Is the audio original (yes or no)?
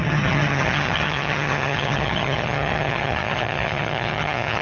no